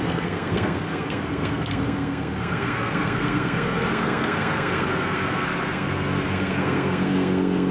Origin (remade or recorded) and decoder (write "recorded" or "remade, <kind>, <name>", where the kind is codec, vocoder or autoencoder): remade, codec, SNAC